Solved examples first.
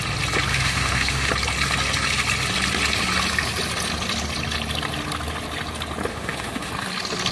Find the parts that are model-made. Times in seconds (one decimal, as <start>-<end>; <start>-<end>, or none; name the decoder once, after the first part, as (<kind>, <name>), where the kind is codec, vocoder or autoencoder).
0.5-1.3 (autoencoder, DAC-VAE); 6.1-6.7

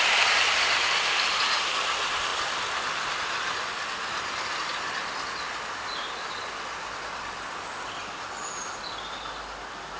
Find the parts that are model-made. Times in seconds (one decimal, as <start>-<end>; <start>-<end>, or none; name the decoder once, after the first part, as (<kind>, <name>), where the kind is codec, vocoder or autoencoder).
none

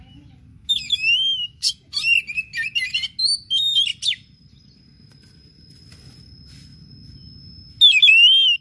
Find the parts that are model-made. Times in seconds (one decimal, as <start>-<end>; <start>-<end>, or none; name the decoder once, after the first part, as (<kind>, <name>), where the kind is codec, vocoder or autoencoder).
0.5-1.7 (autoencoder, DAC-VAE)

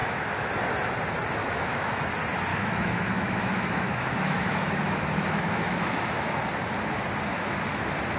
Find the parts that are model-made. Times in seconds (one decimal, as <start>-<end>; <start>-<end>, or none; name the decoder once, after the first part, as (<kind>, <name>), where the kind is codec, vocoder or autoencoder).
0.0-0.5 (autoencoder, DAC-VAE); 1.4-2.1; 2.5-6.4

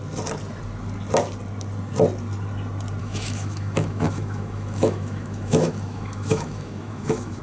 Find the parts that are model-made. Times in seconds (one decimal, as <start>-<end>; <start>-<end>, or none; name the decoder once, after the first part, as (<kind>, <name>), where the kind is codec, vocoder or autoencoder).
3.0-7.4 (autoencoder, DAC-VAE)

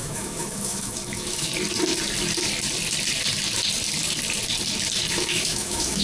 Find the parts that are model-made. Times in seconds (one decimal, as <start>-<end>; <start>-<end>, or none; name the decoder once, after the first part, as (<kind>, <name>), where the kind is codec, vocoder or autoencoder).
0.0-1.5 (autoencoder, DAC-VAE); 5.1-6.0

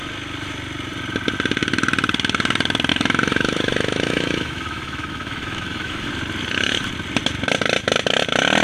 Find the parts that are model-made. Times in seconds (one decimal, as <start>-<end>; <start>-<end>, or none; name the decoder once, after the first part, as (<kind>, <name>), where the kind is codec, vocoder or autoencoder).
2.9-6.1 (autoencoder, DAC-VAE)